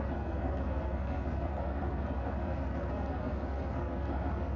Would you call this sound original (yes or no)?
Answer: no